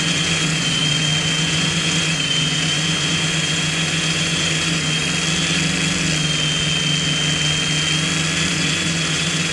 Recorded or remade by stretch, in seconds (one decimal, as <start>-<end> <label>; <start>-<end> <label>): 0.0-5.0 remade; 5.0-8.5 recorded; 8.5-9.5 remade